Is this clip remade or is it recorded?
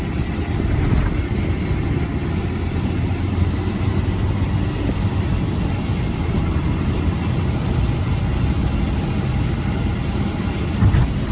recorded